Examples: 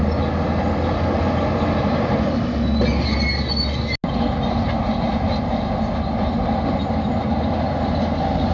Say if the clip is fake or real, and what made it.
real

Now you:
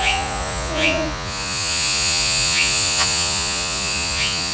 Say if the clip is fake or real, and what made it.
fake, vocoder, Vocos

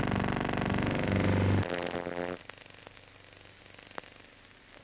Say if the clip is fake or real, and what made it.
real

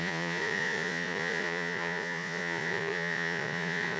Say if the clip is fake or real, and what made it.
fake, vocoder, Vocos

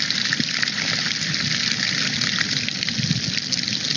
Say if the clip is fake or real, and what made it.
real